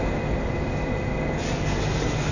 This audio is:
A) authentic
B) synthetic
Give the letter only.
A